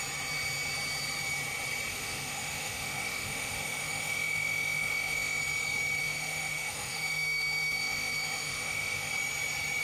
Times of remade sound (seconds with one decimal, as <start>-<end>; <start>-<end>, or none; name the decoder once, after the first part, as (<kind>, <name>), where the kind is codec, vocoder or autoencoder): 1.9-5.4 (autoencoder, DAC-VAE); 6.0-9.1